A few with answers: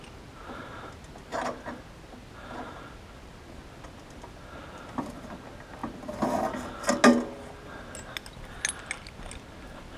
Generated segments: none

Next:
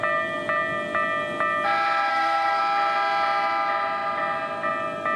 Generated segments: 2.1-2.6 (codec, SNAC)

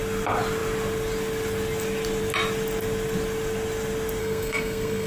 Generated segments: 4.2-5.1 (codec, SNAC)